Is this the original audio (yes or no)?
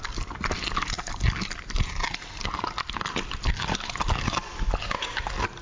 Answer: yes